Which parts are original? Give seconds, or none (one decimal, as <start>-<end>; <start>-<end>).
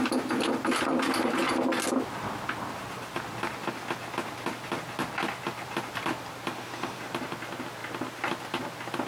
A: 0.0-9.1